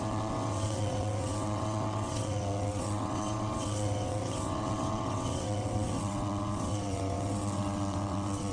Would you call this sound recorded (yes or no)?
no